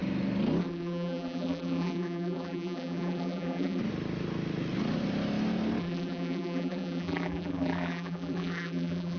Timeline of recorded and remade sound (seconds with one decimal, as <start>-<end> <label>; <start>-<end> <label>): 0.0-0.6 recorded; 0.6-3.8 remade; 3.8-5.8 recorded; 5.8-9.2 remade

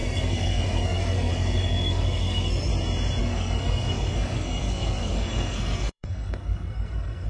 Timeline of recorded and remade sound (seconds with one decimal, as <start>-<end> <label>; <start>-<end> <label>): 0.0-2.7 remade; 2.7-3.2 recorded; 3.2-7.3 remade

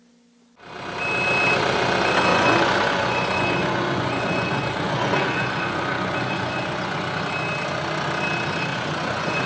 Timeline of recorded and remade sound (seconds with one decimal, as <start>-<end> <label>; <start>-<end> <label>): 0.0-2.3 recorded; 2.3-7.2 remade; 7.2-8.7 recorded; 8.7-9.5 remade